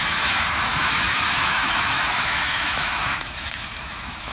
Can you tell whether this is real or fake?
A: fake